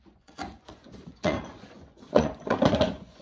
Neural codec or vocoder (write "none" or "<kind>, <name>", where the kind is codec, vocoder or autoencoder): vocoder, Vocos